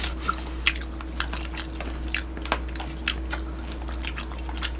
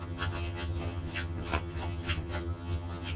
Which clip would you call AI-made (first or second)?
second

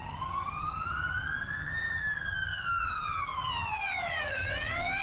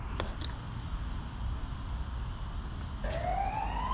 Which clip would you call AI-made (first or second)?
first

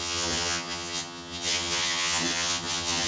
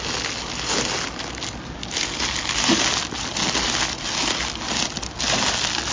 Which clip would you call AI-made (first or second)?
first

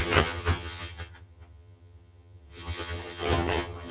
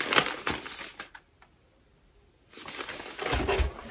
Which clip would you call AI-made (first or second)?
first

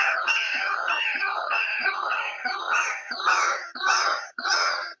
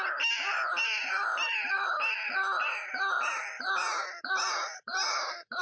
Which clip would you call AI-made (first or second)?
first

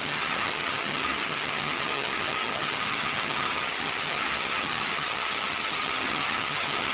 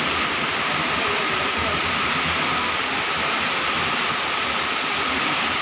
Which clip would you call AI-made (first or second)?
first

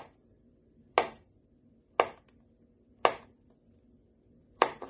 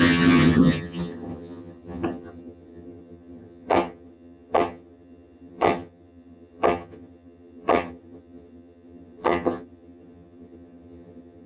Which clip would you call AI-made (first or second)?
second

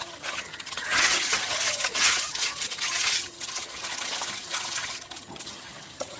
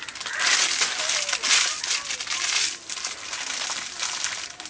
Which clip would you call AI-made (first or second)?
first